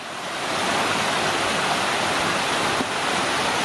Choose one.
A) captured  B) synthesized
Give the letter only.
A